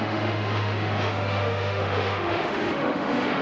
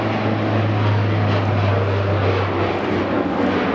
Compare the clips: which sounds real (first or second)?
second